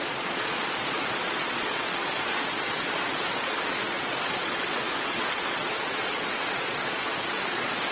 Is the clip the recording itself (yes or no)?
no